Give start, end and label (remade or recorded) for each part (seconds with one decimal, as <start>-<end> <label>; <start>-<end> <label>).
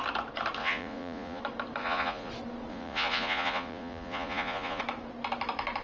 0.0-0.6 recorded; 0.6-1.4 remade; 1.4-1.8 recorded; 1.8-2.3 remade; 2.3-2.7 recorded; 2.7-4.8 remade; 4.8-5.8 recorded